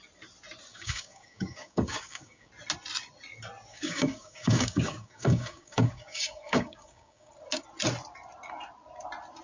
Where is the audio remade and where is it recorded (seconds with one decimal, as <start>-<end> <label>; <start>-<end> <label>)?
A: 0.0-0.7 recorded; 0.7-2.5 remade; 2.5-3.7 recorded; 3.7-7.3 remade; 7.3-9.4 recorded